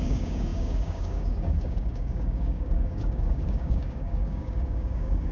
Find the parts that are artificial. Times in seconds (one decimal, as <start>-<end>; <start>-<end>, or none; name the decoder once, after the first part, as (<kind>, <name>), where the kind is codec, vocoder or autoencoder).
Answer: 0.0-5.3 (codec, DAC)